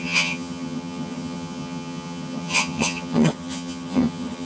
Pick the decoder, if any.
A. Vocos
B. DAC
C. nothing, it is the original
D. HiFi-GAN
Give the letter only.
D